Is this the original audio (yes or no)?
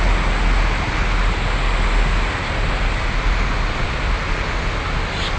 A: yes